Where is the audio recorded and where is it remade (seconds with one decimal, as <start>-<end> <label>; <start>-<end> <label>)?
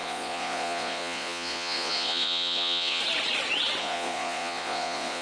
0.0-3.0 remade; 3.0-3.8 recorded; 3.8-5.2 remade